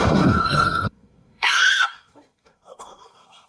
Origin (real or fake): fake